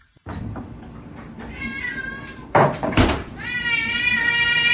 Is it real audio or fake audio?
fake